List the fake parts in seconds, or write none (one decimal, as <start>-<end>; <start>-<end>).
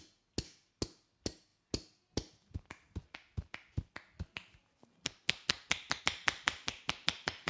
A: none